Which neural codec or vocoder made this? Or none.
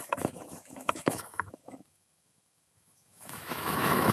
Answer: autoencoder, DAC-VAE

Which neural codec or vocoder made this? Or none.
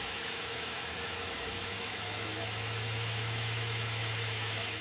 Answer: autoencoder, DAC-VAE